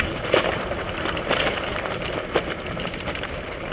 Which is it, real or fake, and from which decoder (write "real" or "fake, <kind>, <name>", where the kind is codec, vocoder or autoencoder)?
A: fake, vocoder, BigVGAN v2